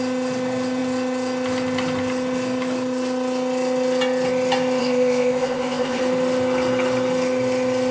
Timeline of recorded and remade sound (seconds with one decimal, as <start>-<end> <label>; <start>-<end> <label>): 0.0-4.8 recorded; 4.8-6.0 remade; 6.0-7.9 recorded